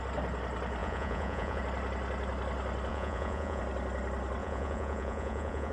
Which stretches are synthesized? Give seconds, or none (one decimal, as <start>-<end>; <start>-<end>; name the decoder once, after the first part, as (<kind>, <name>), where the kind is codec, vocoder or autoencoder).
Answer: 0.8-1.6 (vocoder, Vocos); 2.9-3.6; 4.4-5.7